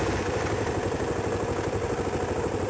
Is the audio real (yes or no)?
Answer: yes